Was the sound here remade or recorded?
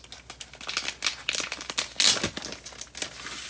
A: recorded